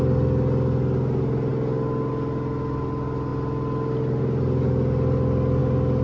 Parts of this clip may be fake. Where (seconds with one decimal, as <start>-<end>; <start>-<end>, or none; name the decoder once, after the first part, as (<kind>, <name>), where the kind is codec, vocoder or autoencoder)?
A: none